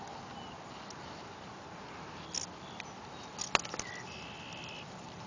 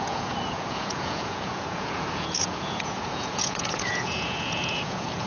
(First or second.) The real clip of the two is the first